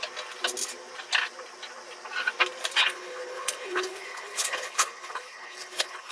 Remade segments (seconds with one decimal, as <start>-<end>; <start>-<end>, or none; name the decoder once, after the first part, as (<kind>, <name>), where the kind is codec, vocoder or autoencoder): 2.8-6.1 (codec, HILCodec)